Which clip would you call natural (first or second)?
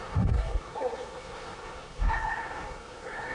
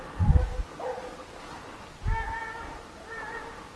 second